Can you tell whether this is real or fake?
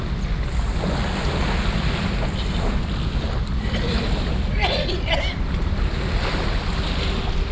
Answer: real